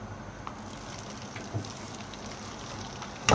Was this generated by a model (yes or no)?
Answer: no